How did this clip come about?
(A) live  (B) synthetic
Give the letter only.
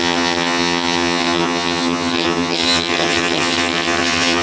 B